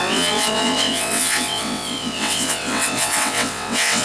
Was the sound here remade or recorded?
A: remade